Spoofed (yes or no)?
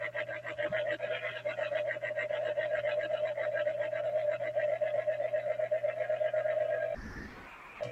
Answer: no